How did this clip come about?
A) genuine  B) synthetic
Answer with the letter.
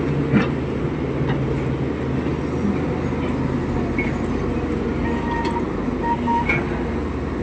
A